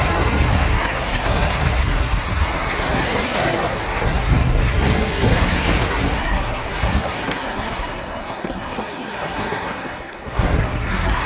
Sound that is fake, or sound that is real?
fake